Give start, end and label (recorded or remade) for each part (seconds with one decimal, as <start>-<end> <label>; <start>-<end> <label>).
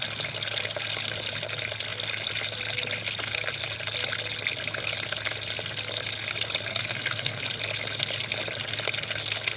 0.0-6.7 recorded; 6.7-7.4 remade; 7.4-9.6 recorded